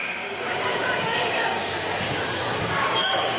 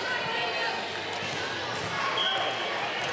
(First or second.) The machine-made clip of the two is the first